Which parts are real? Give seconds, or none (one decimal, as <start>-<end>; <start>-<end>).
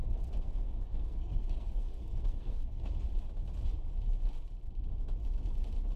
2.9-6.0